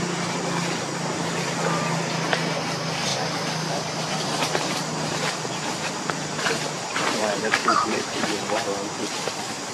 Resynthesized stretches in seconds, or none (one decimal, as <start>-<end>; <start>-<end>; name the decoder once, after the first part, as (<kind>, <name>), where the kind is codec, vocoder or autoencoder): 7.6-8.3 (vocoder, BigVGAN v2)